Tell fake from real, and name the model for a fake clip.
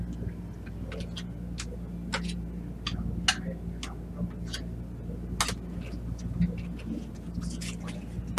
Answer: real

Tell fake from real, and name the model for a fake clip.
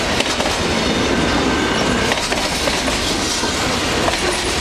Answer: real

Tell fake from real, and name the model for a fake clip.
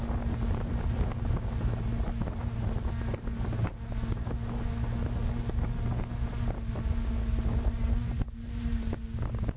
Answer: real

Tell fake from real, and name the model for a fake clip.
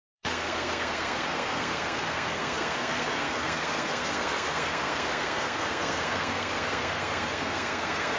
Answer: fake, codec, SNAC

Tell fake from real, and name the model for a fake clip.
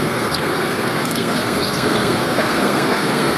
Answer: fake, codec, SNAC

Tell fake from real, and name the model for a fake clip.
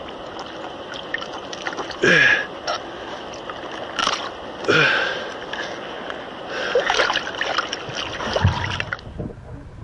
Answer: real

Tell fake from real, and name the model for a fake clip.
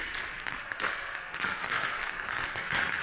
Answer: fake, codec, SNAC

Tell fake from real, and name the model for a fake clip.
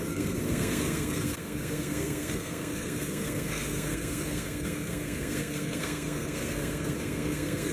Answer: fake, codec, SNAC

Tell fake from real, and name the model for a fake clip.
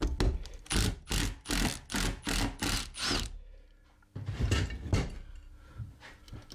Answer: real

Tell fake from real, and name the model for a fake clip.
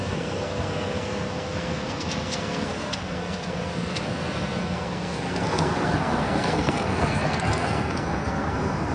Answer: fake, codec, SNAC